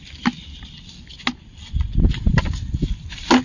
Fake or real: real